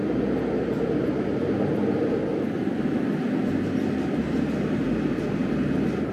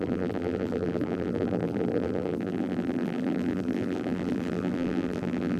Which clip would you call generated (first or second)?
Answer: second